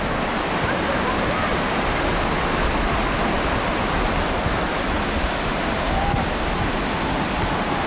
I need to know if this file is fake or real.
real